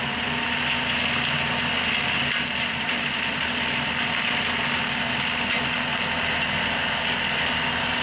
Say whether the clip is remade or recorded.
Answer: recorded